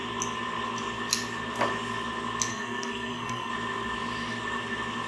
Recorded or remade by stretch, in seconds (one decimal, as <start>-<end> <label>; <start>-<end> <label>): 0.0-2.5 recorded; 2.5-3.5 remade; 3.5-5.1 recorded